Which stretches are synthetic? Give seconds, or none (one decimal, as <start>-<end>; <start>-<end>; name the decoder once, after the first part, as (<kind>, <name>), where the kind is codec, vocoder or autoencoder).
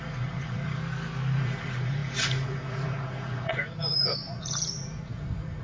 0.0-0.8 (vocoder, Vocos); 1.4-5.6